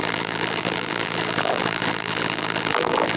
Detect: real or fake fake